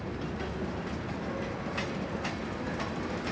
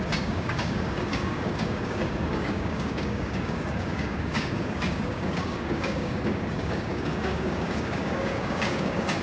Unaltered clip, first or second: first